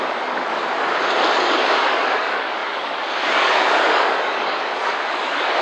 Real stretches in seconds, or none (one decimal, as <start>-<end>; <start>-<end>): 0.6-1.3